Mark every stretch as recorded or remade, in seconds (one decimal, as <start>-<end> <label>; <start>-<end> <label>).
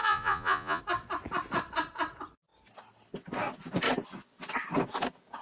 0.0-0.8 remade; 0.8-5.4 recorded